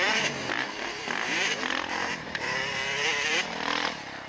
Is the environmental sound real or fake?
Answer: fake